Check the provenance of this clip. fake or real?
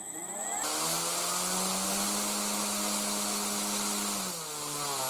real